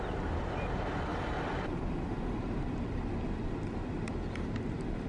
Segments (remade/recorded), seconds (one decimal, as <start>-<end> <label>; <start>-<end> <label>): 0.0-1.1 recorded; 1.1-2.4 remade; 2.4-5.1 recorded